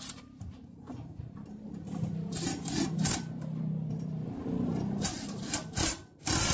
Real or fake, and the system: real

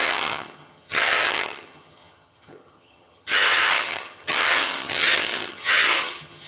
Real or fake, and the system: fake, vocoder, HiFi-GAN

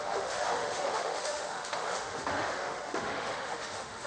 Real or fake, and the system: fake, autoencoder, DAC-VAE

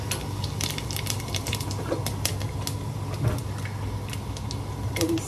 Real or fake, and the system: real